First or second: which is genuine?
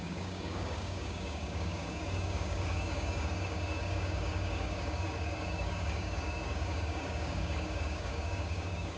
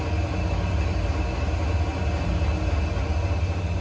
second